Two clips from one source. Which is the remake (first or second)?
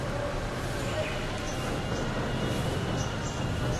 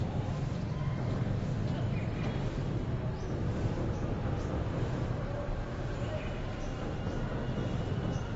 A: second